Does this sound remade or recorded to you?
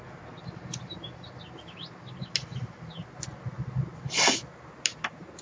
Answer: recorded